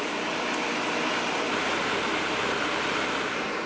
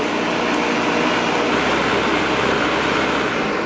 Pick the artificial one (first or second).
first